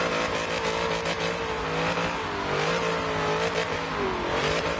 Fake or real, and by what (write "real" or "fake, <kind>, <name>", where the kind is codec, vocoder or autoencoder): real